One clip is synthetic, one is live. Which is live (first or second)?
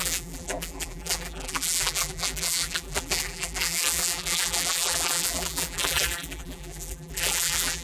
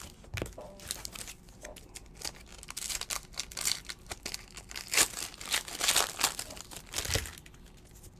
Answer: second